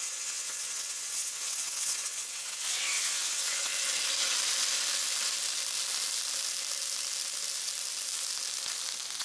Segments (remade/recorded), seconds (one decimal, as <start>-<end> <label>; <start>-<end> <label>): 0.0-3.7 remade; 3.7-9.2 recorded